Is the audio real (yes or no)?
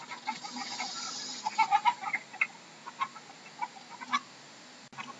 yes